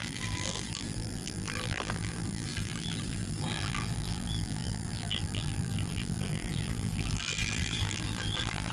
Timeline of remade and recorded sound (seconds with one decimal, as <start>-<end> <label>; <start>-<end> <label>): 0.0-8.7 remade